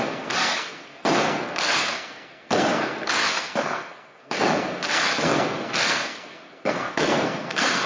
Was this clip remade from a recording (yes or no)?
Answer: yes